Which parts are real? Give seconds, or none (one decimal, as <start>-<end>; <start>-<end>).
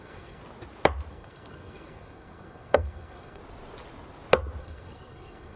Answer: 0.4-1.1; 3.4-4.6